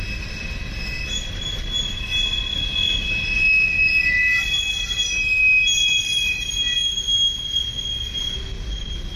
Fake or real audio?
real